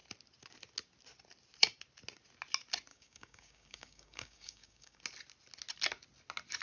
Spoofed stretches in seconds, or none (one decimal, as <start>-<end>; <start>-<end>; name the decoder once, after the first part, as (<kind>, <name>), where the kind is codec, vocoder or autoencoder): 2.9-5.0 (codec, DAC)